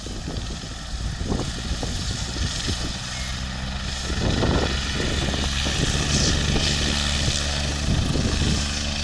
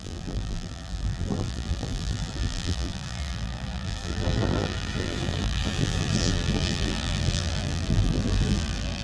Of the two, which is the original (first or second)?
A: first